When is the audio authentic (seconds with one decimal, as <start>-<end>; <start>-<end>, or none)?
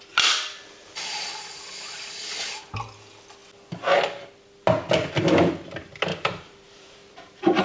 0.0-6.1